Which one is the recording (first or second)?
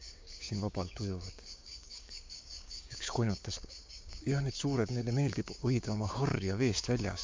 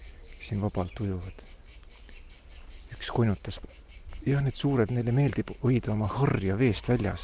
second